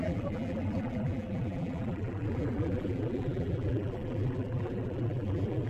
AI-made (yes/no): yes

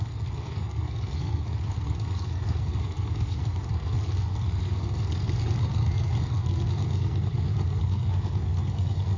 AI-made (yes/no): yes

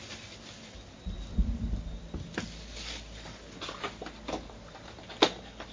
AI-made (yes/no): no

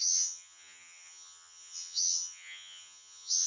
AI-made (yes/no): yes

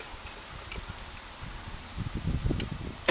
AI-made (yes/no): no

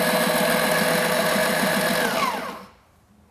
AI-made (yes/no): no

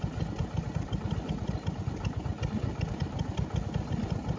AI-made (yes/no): no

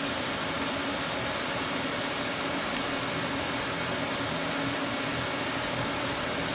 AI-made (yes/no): no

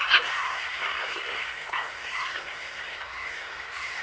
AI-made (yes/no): yes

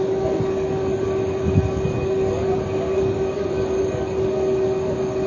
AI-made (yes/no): yes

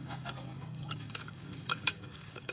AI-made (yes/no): yes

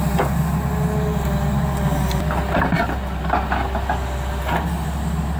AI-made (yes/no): no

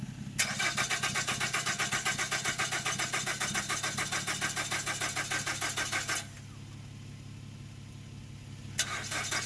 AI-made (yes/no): no